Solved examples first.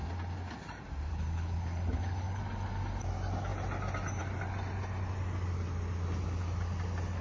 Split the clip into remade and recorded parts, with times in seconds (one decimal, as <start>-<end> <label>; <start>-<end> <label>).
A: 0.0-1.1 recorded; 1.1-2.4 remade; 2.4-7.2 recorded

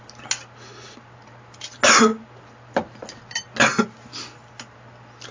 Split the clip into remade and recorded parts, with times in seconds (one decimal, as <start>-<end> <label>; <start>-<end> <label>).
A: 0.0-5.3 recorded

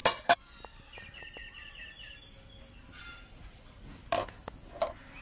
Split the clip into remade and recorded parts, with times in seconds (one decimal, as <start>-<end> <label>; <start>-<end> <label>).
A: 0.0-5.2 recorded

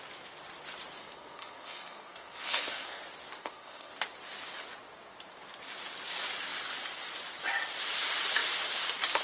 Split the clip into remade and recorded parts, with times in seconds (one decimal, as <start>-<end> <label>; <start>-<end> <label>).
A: 0.0-1.0 recorded; 1.0-3.0 remade; 3.0-3.4 recorded; 3.4-3.9 remade; 3.9-9.2 recorded

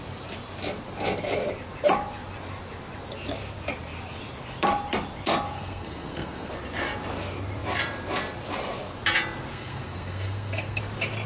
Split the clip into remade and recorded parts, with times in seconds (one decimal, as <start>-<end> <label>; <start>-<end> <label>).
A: 0.0-5.5 recorded; 5.5-6.5 remade; 6.5-9.5 recorded; 9.5-10.8 remade; 10.8-11.3 recorded

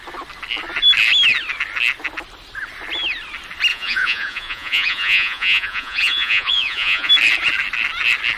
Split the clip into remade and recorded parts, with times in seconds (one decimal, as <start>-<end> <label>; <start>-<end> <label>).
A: 0.0-3.7 recorded; 3.7-7.1 remade; 7.1-8.4 recorded

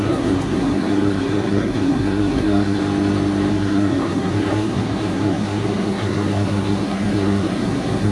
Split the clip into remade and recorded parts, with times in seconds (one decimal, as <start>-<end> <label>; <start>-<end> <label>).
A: 0.0-2.8 remade; 2.8-3.5 recorded; 3.5-8.1 remade

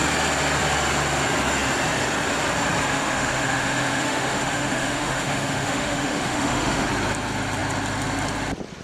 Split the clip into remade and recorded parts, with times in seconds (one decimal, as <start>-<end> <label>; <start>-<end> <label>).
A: 0.0-2.9 recorded; 2.9-6.9 remade; 6.9-8.8 recorded